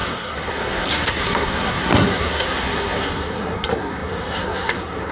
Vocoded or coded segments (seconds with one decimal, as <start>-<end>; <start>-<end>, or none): 0.0-5.1